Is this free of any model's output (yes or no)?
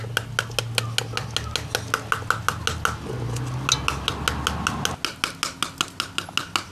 yes